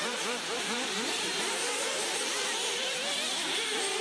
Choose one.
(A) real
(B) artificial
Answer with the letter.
B